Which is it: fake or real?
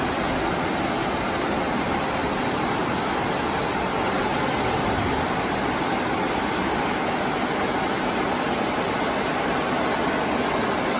real